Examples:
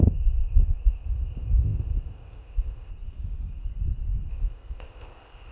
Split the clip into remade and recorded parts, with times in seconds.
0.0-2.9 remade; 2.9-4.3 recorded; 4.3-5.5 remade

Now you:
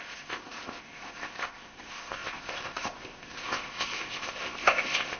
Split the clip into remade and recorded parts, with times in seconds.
0.0-5.2 remade

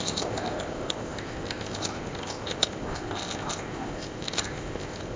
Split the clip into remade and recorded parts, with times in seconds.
0.0-5.2 remade

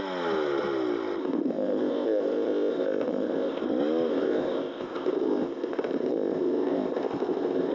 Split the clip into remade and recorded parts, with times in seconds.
0.0-1.2 recorded; 1.2-3.6 remade; 3.6-4.1 recorded; 4.1-7.7 remade

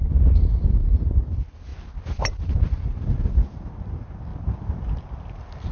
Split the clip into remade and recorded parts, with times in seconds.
0.0-5.7 recorded

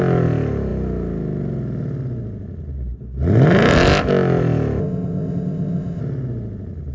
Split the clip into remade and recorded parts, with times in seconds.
0.0-4.8 recorded; 4.8-6.0 remade; 6.0-6.9 recorded

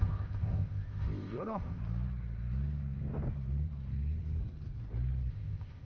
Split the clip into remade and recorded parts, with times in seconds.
0.0-1.8 remade; 1.8-5.3 recorded; 5.3-5.8 remade

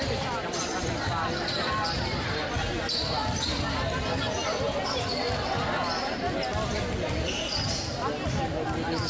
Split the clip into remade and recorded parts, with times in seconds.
0.0-9.1 recorded